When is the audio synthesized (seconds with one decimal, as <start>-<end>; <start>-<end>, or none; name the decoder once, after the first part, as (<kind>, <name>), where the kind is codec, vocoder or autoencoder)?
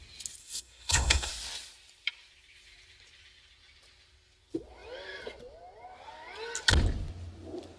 0.4-1.3 (codec, SNAC)